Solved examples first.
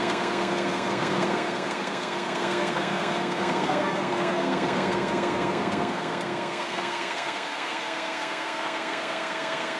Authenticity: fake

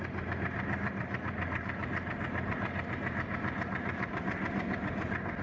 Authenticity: real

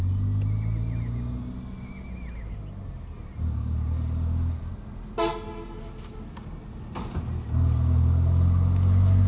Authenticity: real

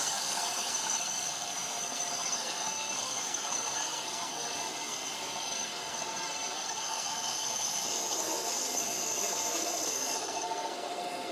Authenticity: fake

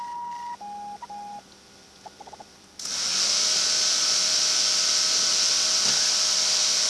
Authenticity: real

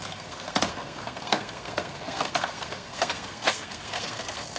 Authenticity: fake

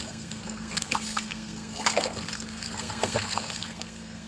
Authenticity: fake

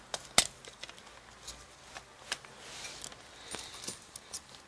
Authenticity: real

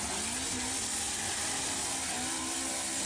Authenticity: real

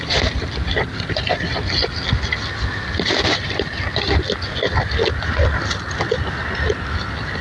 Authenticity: real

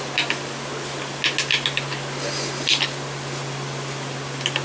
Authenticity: real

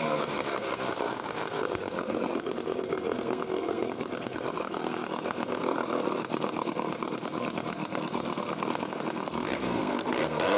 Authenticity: fake